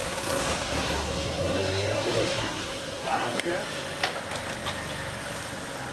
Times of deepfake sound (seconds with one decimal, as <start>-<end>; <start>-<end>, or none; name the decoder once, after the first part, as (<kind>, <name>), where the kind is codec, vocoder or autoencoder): 0.0-3.5 (codec, SNAC)